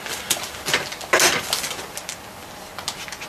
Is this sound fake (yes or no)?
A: no